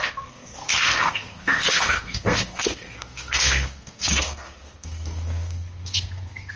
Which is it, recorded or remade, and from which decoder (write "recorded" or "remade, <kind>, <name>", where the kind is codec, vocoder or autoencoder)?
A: remade, codec, SNAC